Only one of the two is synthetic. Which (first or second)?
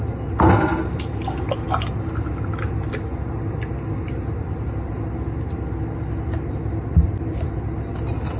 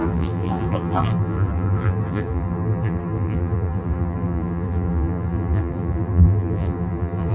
second